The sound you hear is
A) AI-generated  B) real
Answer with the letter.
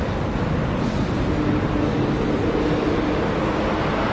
B